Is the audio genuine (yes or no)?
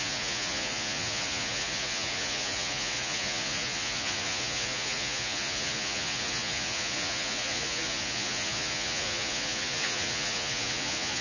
no